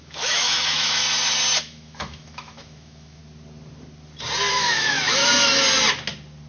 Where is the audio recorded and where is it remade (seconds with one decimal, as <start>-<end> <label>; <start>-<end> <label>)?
0.0-1.0 remade; 1.0-1.6 recorded; 1.6-3.2 remade; 3.2-4.5 recorded; 4.5-5.2 remade; 5.2-6.5 recorded